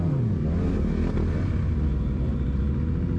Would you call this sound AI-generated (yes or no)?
no